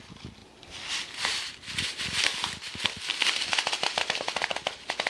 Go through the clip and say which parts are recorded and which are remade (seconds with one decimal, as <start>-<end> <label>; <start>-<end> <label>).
0.0-5.1 recorded